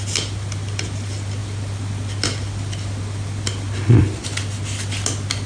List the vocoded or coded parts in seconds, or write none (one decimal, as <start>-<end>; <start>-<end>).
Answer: none